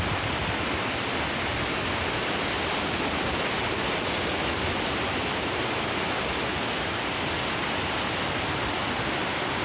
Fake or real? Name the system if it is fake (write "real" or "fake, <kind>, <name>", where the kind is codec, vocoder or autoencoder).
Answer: real